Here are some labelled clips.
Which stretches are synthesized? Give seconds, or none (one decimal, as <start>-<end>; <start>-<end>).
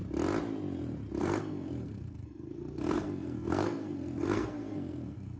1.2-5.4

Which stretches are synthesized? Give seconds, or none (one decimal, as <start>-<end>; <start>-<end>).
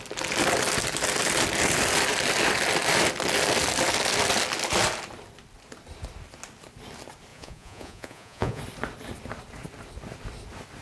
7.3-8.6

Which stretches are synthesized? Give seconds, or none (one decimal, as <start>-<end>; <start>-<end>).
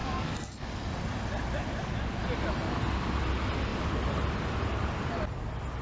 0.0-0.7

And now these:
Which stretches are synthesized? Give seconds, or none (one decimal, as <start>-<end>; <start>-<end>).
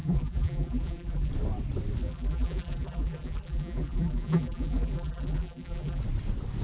0.0-1.3; 2.0-6.0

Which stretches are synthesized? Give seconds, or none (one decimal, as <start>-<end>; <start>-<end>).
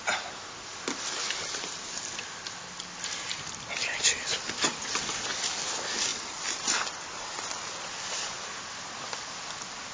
none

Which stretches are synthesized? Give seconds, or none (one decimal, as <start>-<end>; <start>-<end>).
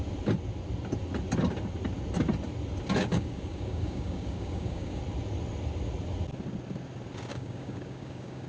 3.0-5.0; 7.3-8.5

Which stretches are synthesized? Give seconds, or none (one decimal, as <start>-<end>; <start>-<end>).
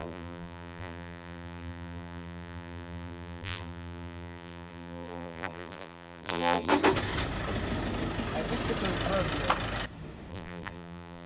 0.0-6.7; 10.3-11.3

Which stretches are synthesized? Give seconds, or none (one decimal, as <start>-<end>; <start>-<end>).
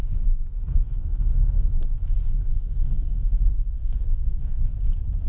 0.7-1.7; 2.4-4.6